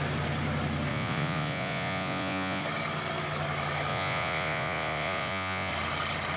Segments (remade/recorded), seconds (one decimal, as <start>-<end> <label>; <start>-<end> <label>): 0.0-0.9 recorded; 0.9-2.6 remade; 2.6-3.9 recorded; 3.9-5.7 remade; 5.7-6.4 recorded